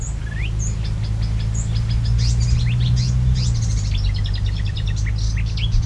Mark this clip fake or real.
real